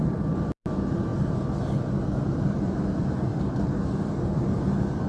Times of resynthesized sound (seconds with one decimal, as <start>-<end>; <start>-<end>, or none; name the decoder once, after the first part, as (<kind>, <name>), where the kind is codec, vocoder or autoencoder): 0.0-1.1 (vocoder, BigVGAN v2); 2.2-3.3; 4.2-5.1